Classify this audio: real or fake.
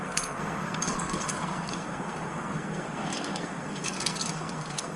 fake